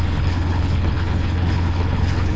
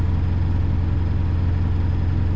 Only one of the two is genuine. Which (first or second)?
second